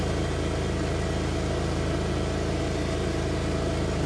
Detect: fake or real real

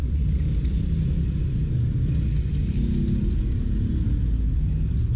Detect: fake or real real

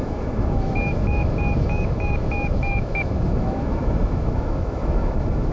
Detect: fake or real fake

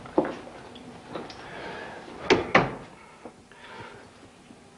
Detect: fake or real real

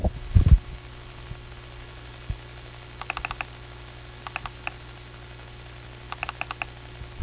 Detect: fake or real real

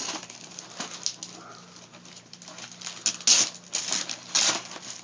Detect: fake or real real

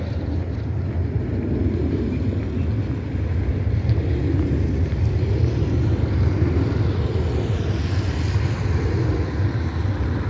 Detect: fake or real real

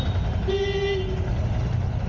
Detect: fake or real real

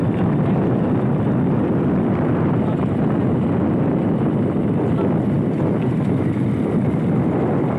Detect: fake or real real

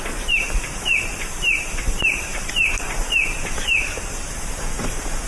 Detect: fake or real fake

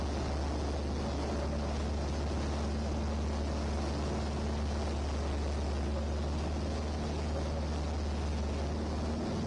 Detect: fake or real real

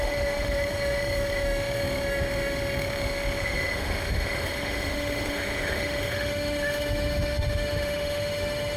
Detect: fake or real fake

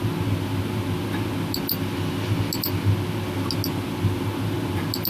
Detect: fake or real real